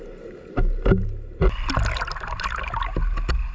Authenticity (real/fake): real